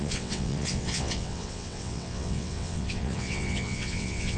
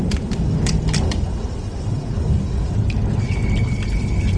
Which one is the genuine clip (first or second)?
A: second